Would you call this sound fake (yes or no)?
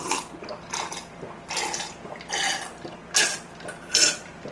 no